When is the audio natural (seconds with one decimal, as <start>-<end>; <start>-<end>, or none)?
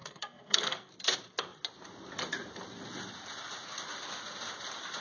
0.9-5.0